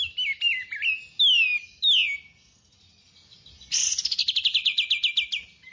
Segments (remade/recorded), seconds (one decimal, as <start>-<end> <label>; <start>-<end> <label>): 0.0-5.7 recorded